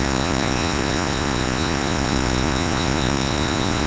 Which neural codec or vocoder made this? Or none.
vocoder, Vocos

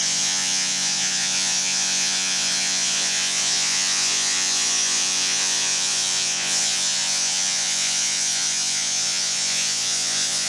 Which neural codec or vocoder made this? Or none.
vocoder, Vocos